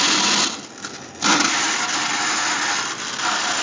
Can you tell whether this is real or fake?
real